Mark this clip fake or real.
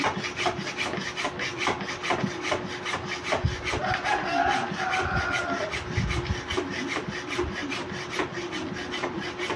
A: real